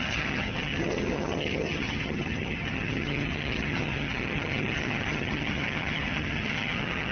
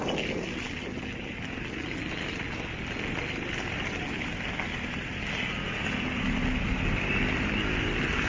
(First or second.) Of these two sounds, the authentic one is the second